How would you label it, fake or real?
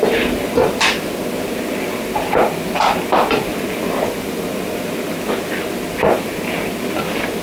real